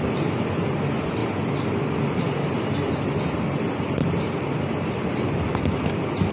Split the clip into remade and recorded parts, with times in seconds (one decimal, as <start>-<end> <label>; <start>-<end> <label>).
0.0-6.3 recorded